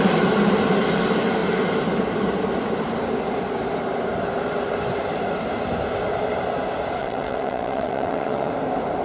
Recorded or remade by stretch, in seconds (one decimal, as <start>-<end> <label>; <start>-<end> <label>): 0.0-7.0 recorded; 7.0-8.5 remade; 8.5-9.0 recorded